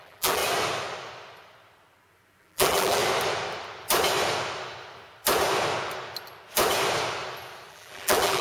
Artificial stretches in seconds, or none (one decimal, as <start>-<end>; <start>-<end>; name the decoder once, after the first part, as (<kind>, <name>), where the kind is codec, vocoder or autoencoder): 0.0-0.4 (vocoder, BigVGAN v2); 2.4-3.0; 7.7-8.4